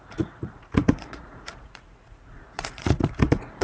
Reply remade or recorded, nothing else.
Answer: remade